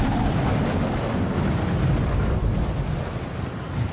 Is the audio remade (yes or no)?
no